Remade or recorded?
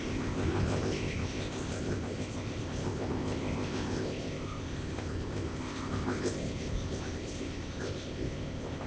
remade